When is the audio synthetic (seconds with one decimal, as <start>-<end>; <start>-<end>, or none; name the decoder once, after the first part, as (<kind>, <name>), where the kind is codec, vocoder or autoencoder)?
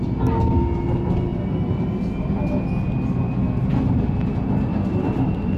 none